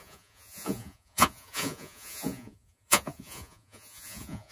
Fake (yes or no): yes